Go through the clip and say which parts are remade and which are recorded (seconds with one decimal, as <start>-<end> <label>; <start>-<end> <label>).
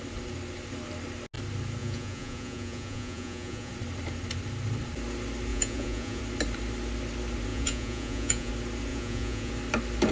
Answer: 0.0-1.8 recorded; 1.8-3.7 remade; 3.7-5.5 recorded; 5.5-6.2 remade; 6.2-7.5 recorded; 7.5-8.5 remade; 8.5-8.9 recorded; 8.9-9.5 remade; 9.5-10.1 recorded